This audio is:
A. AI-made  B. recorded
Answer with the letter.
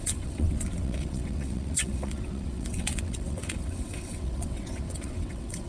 A